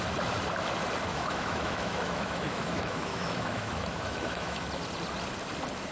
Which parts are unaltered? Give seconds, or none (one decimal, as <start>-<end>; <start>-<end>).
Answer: 0.0-1.1; 4.6-5.9